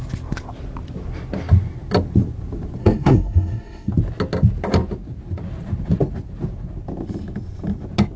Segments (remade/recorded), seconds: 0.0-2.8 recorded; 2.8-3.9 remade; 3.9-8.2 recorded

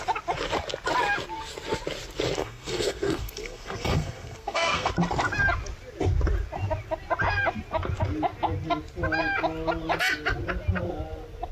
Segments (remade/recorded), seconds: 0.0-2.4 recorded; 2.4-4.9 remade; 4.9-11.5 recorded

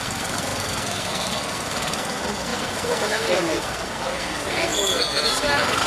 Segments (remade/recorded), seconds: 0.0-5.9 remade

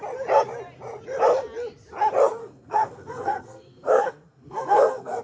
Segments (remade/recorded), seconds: 0.0-2.4 recorded; 2.4-5.2 remade

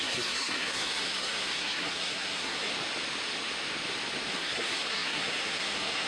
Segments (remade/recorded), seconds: 0.0-2.7 remade; 2.7-4.3 recorded; 4.3-6.1 remade

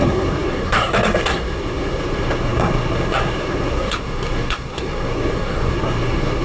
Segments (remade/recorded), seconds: 0.0-6.4 remade

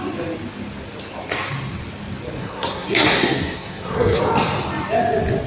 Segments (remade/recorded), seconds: 0.0-2.4 recorded; 2.4-4.2 remade; 4.2-5.5 recorded

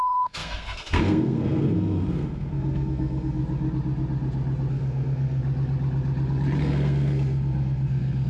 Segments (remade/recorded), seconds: 0.0-3.4 remade; 3.4-4.7 recorded; 4.7-5.4 remade; 5.4-6.6 recorded; 6.6-8.3 remade